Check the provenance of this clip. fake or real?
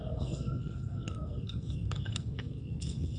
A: fake